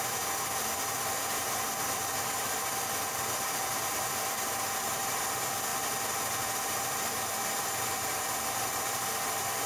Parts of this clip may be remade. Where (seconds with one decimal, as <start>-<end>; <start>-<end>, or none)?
0.0-9.7